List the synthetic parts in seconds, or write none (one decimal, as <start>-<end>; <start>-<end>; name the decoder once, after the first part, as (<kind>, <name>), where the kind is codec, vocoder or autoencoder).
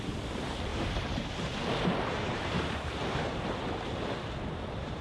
0.7-3.7 (vocoder, BigVGAN v2)